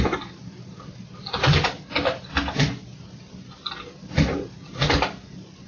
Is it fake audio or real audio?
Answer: real